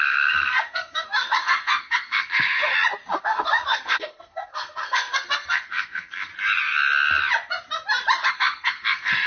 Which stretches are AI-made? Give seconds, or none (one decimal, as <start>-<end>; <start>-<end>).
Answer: 0.0-2.7; 3.2-6.3; 8.3-9.3